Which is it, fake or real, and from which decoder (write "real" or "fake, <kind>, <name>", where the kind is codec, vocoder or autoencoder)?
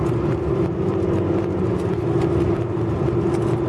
real